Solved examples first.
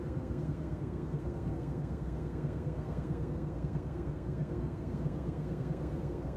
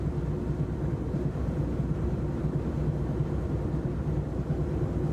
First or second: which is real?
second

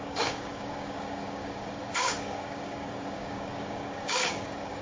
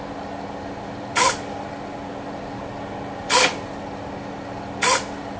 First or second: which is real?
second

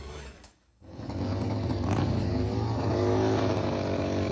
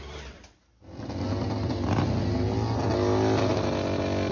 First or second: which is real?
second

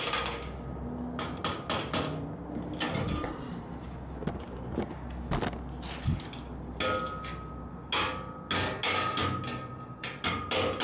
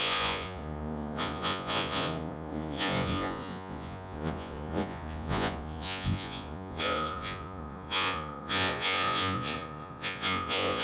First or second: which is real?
first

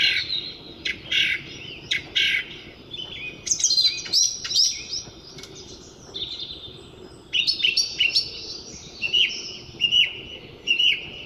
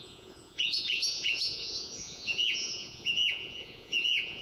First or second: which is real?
first